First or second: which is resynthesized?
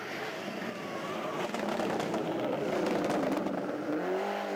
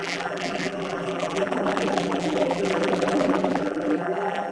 second